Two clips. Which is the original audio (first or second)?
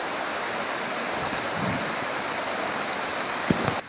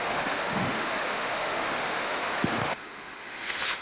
first